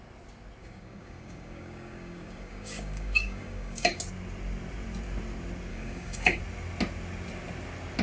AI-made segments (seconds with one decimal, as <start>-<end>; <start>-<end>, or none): 0.6-4.0; 5.7-6.4